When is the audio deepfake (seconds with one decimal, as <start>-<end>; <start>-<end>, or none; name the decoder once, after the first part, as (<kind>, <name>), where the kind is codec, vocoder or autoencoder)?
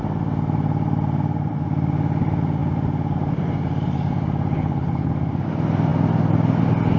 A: 4.6-5.1 (codec, HILCodec)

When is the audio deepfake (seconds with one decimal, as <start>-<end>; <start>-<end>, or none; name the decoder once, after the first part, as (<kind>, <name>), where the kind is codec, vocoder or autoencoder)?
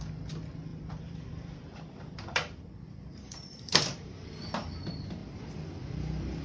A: 0.7-2.6 (vocoder, BigVGAN v2); 3.1-4.3; 5.2-6.4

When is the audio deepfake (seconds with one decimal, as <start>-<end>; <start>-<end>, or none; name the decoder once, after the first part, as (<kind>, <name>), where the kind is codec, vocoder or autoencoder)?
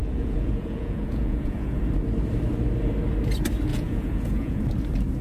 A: 0.0-1.8 (vocoder, Vocos); 3.7-4.6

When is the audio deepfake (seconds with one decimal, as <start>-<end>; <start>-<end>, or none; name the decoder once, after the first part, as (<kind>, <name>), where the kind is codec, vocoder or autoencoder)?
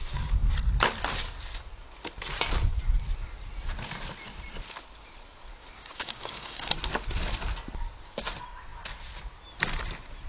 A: 5.6-6.7 (codec, DAC)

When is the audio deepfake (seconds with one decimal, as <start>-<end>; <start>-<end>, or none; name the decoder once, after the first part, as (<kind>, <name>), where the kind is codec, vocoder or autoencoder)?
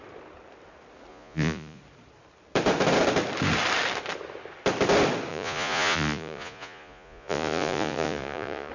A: 1.1-1.8 (vocoder, Vocos); 5.3-8.7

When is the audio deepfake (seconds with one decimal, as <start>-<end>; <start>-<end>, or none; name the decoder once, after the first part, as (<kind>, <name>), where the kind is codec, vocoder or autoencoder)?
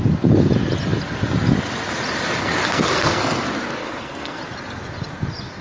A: 2.4-3.4 (codec, SNAC); 3.8-4.4